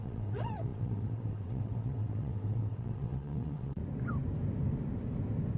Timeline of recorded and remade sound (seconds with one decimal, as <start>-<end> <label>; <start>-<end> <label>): 0.0-3.8 remade; 3.8-5.6 recorded

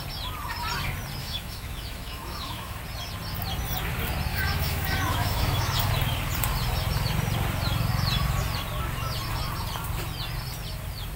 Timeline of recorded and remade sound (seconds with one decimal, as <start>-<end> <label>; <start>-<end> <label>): 0.0-1.2 recorded; 1.2-2.8 remade; 2.8-4.3 recorded; 4.3-5.9 remade; 5.9-11.2 recorded

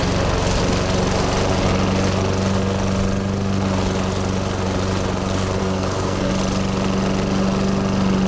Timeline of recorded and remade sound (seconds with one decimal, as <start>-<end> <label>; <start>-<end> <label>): 0.0-5.6 recorded; 5.6-6.3 remade; 6.3-8.3 recorded

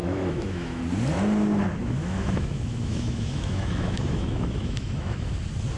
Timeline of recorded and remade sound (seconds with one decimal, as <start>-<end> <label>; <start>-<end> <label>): 0.0-0.8 remade; 0.8-1.8 recorded; 1.8-5.3 remade; 5.3-5.8 recorded

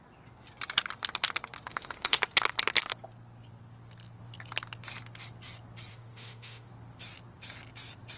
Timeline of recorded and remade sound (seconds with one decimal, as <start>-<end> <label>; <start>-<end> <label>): 0.0-1.7 recorded; 1.7-2.2 remade; 2.2-5.9 recorded; 5.9-6.7 remade; 6.7-8.2 recorded

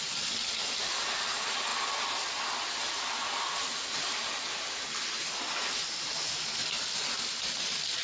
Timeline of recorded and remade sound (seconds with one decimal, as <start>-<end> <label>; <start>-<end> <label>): 0.0-8.0 recorded